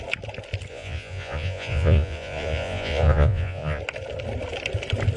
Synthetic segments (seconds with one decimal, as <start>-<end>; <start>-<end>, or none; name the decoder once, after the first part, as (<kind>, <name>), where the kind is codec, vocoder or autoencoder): 0.7-3.8 (vocoder, Vocos)